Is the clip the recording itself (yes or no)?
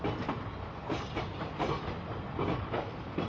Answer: yes